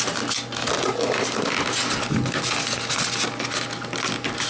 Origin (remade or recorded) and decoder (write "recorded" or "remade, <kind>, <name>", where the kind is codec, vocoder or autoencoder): recorded